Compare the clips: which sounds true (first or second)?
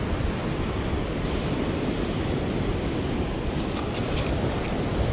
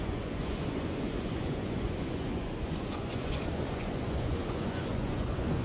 first